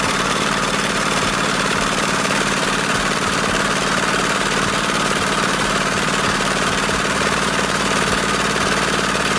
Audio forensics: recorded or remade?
remade